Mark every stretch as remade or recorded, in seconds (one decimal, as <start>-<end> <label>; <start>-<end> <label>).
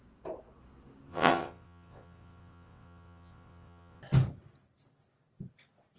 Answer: 0.0-1.1 recorded; 1.1-4.0 remade; 4.0-6.0 recorded